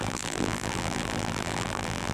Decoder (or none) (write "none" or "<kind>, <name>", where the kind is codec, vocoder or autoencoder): vocoder, BigVGAN v2